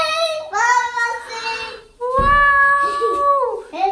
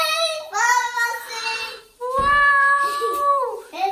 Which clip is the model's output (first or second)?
second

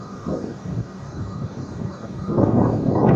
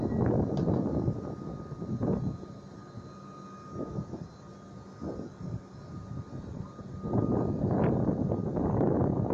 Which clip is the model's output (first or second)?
first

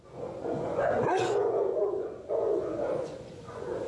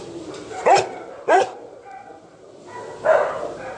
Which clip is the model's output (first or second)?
first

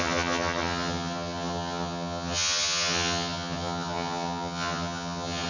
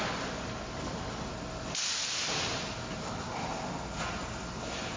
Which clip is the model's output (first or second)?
first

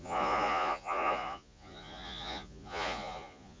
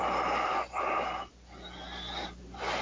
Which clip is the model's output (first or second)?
first